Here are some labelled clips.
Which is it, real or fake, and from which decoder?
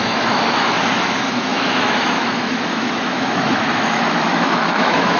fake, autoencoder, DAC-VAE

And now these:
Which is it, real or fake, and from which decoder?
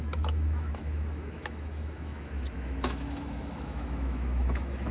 fake, autoencoder, DAC-VAE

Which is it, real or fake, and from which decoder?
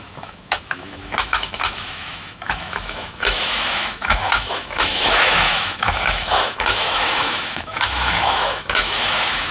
fake, autoencoder, DAC-VAE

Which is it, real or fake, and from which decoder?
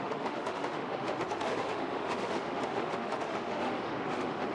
fake, autoencoder, DAC-VAE